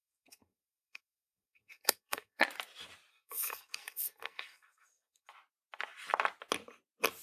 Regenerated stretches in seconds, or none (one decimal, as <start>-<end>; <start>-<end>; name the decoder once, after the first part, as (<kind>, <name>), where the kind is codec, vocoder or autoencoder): 0.0-2.4 (codec, SNAC); 3.1-5.3